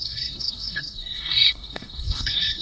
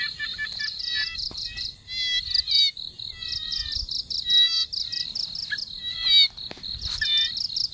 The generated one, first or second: first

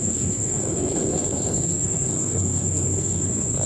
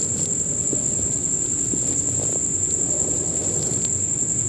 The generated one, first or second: first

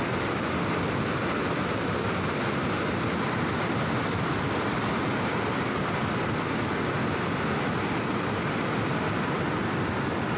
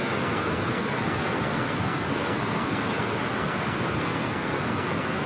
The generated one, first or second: second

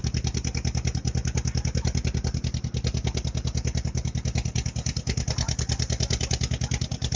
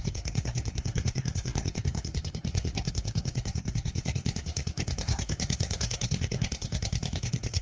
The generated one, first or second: second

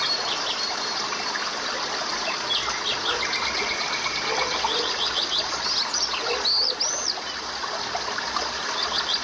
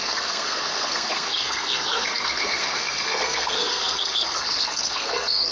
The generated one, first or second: second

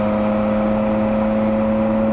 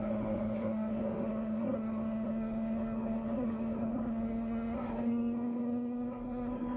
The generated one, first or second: second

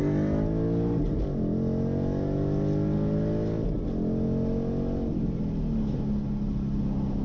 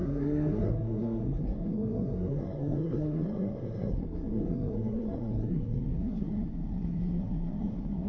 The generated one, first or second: second